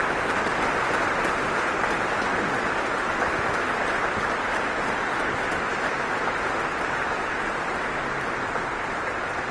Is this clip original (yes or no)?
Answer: yes